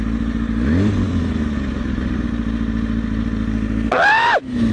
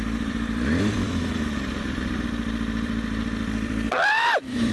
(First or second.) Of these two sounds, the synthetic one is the second